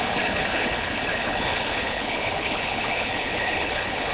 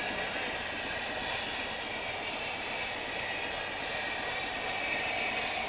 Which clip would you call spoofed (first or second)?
first